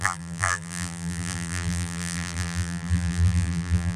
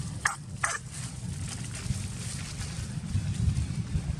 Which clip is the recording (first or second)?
second